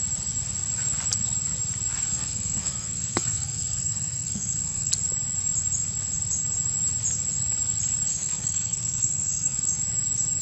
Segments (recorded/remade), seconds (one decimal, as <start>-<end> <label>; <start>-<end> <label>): 0.0-2.1 recorded; 2.1-4.9 remade; 4.9-8.1 recorded; 8.1-9.7 remade; 9.7-10.4 recorded

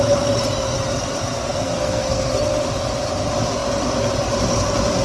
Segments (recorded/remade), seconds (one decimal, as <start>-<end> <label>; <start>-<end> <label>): 0.0-1.5 recorded; 1.5-2.3 remade; 2.3-5.0 recorded